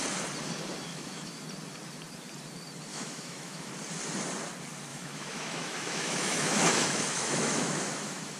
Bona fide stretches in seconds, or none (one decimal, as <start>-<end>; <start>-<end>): 0.0-0.9; 1.4-2.9; 3.7-4.9